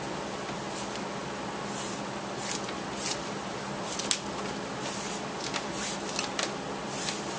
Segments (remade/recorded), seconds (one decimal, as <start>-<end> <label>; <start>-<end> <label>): 0.0-7.4 recorded